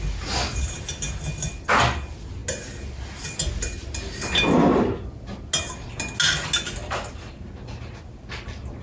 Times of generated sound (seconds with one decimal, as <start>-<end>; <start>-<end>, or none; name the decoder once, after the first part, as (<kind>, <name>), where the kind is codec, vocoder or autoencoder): none